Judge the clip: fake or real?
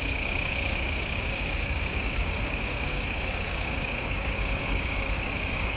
fake